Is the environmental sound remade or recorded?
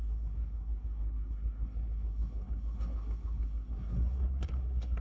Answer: remade